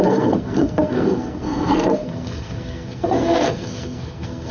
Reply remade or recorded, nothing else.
remade